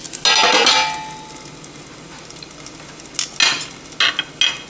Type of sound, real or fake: real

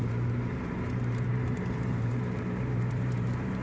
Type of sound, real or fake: fake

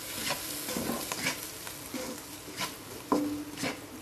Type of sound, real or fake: real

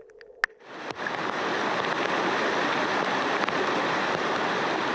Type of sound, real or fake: real